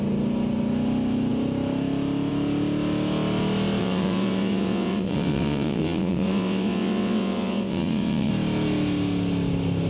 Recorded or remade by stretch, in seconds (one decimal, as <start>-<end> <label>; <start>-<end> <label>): 0.0-3.8 recorded; 3.8-8.3 remade; 8.3-9.9 recorded